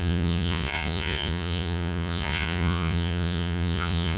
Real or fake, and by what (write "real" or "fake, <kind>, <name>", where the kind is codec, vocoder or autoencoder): fake, vocoder, Vocos